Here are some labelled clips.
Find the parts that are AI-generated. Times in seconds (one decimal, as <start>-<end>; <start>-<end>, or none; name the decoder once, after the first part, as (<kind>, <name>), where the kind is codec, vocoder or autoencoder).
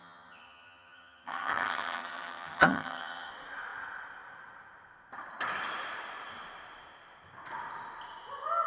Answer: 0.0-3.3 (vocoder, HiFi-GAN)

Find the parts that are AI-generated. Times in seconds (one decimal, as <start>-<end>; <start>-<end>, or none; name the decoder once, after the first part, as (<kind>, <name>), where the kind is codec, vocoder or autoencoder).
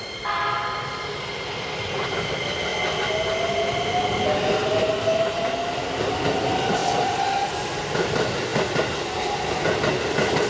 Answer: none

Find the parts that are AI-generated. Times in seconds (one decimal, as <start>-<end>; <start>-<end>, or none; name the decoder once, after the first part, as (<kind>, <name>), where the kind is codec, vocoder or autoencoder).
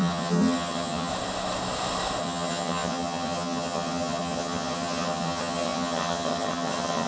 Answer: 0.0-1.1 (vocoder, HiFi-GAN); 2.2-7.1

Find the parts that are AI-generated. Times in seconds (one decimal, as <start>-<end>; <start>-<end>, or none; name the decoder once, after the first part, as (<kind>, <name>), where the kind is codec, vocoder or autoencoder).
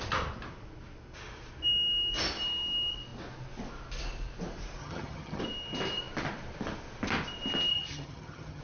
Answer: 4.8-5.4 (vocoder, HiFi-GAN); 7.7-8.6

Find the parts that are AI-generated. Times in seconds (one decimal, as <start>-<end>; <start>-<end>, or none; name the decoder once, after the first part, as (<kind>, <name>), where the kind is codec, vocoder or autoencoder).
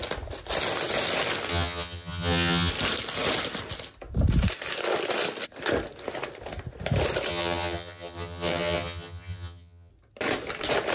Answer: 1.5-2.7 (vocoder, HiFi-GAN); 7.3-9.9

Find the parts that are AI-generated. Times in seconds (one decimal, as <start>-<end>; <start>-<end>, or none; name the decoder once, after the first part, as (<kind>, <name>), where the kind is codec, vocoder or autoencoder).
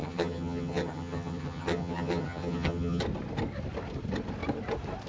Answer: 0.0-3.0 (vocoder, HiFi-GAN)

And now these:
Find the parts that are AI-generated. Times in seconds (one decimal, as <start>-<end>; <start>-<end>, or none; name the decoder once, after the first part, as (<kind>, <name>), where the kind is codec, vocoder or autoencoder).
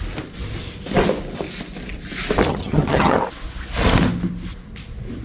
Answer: 2.5-3.2 (vocoder, HiFi-GAN)